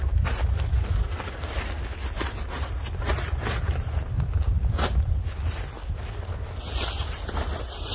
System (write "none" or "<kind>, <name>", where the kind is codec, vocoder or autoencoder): none